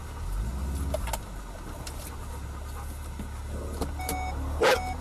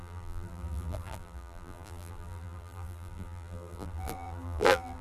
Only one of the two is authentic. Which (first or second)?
first